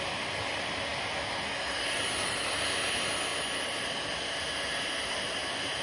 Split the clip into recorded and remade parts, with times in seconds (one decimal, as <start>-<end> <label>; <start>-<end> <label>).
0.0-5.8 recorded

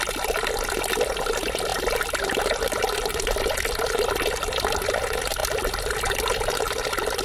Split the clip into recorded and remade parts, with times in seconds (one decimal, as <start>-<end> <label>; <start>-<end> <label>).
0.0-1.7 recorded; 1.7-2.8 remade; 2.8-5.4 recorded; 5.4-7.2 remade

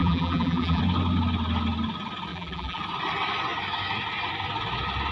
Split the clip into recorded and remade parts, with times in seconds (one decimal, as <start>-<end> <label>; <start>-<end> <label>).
0.0-0.8 remade; 0.8-2.3 recorded; 2.3-2.8 remade; 2.8-5.1 recorded

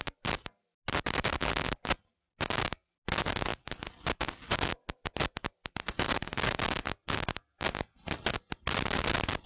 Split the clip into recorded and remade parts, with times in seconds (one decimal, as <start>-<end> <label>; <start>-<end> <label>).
0.0-1.4 recorded; 1.4-1.9 remade; 1.9-9.5 recorded